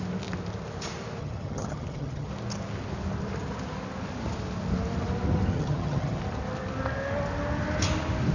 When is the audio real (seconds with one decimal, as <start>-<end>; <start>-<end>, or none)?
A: 0.0-1.2; 2.3-5.5; 6.2-8.3